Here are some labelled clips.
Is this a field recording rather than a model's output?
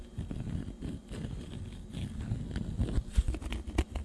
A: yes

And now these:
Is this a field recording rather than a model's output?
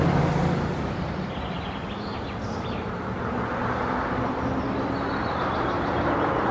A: yes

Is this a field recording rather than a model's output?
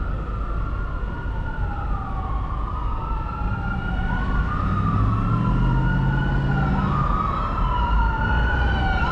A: yes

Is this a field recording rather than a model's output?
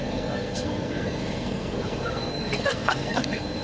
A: no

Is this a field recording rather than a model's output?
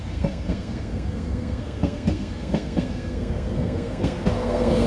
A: no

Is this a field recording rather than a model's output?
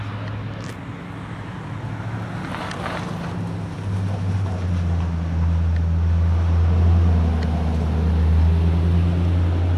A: yes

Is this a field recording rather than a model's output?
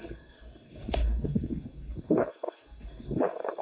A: no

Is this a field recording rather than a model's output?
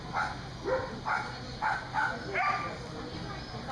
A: yes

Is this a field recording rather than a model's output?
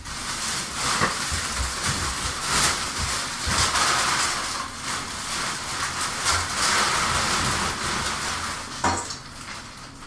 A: yes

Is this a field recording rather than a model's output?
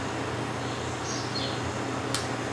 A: yes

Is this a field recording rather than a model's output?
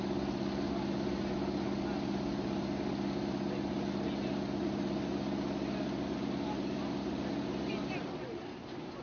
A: yes